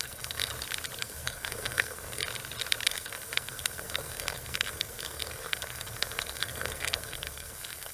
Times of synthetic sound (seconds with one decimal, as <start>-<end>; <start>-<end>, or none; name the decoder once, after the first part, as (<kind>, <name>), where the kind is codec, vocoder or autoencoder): 0.0-0.5 (codec, SNAC); 1.0-2.2; 2.9-7.9